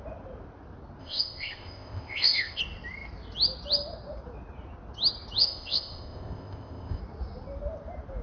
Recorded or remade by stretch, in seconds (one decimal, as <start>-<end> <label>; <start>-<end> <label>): 0.0-1.0 recorded; 1.0-2.6 remade; 2.6-5.4 recorded; 5.4-7.0 remade; 7.0-8.2 recorded